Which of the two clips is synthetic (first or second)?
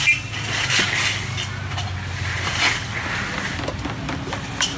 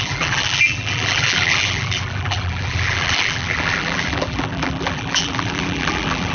second